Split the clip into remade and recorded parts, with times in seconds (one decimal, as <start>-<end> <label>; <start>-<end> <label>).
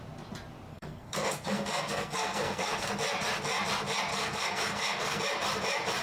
0.0-0.7 recorded; 0.7-2.9 remade; 2.9-4.1 recorded; 4.1-5.2 remade; 5.2-6.0 recorded